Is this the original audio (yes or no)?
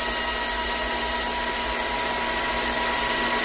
yes